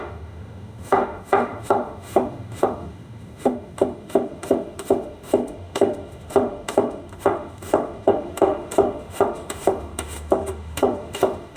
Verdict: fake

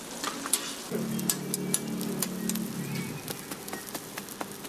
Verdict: real